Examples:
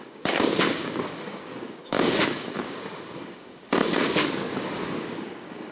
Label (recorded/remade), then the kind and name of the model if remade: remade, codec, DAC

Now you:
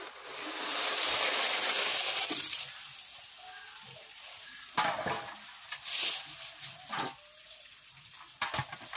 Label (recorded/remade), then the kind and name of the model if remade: recorded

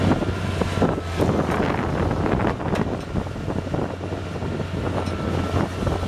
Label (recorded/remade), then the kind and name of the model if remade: recorded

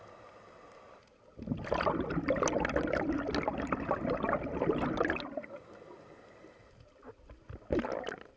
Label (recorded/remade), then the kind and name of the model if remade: recorded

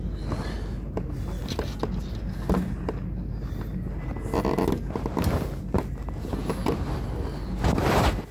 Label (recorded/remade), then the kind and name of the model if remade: recorded